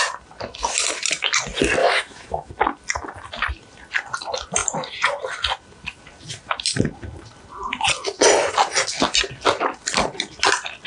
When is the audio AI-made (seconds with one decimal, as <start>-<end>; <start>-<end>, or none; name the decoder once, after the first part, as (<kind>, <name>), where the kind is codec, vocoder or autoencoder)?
1.8-2.5 (autoencoder, DAC-VAE)